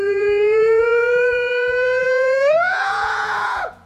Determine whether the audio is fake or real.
fake